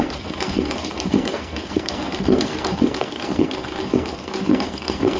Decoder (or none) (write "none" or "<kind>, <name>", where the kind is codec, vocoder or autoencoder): codec, SNAC